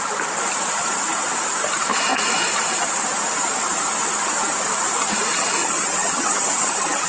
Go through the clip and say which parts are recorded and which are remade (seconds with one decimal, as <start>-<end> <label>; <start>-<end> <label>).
0.0-5.6 recorded; 5.6-7.1 remade